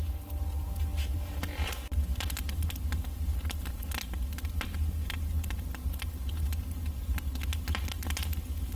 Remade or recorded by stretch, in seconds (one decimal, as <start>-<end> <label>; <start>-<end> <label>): 0.0-8.8 recorded